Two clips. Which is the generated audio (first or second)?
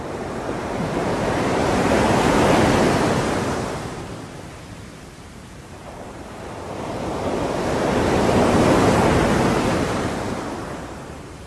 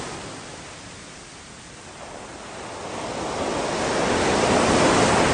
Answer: first